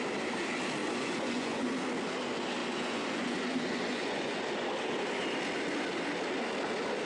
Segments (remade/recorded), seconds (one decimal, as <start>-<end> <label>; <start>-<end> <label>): 0.0-0.8 recorded; 0.8-1.7 remade; 1.7-2.6 recorded; 2.6-4.4 remade; 4.4-7.1 recorded